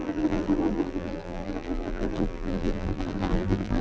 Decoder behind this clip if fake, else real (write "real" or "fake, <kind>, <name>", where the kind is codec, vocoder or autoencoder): fake, vocoder, BigVGAN v2